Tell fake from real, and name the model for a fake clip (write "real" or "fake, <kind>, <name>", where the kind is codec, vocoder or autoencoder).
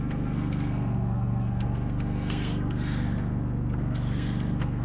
fake, codec, SNAC